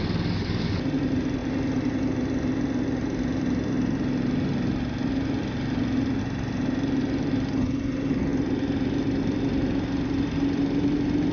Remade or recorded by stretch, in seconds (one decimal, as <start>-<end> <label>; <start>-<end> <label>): 0.0-11.3 recorded